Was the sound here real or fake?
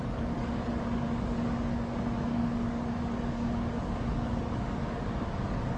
fake